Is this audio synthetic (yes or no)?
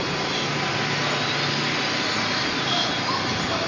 no